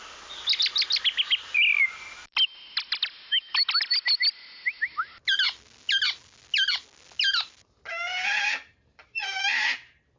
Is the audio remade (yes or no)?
no